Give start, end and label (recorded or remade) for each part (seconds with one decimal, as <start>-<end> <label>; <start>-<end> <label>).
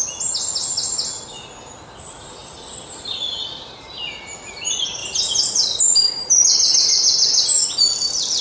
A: 0.0-2.4 recorded; 2.4-3.9 remade; 3.9-5.0 recorded; 5.0-5.8 remade; 5.8-8.4 recorded